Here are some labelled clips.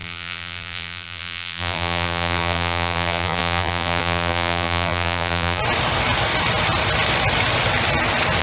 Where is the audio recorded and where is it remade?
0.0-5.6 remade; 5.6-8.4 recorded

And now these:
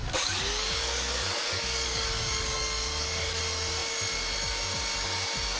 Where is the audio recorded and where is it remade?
0.0-3.4 remade; 3.4-5.6 recorded

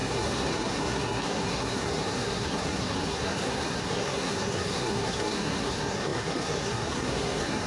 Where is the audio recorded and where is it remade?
0.0-7.7 remade

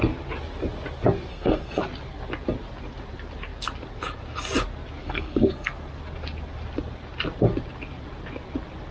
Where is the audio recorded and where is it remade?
0.0-1.3 recorded; 1.3-1.8 remade; 1.8-5.0 recorded; 5.0-5.7 remade; 5.7-8.9 recorded

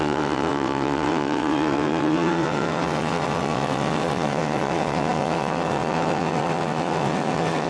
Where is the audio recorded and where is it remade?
0.0-7.7 remade

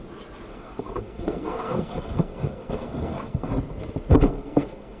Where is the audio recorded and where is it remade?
0.0-0.5 recorded; 0.5-3.5 remade; 3.5-4.1 recorded; 4.1-5.0 remade

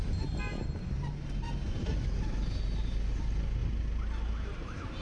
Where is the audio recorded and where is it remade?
0.0-5.0 recorded

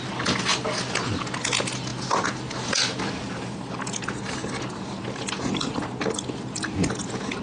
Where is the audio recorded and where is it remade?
0.0-7.4 recorded